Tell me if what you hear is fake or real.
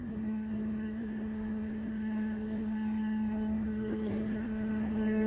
fake